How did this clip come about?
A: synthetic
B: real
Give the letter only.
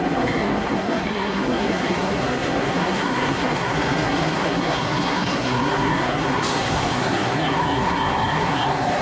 A